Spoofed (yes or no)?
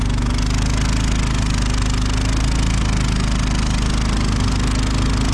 no